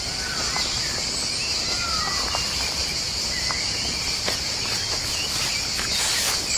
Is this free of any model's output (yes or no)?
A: yes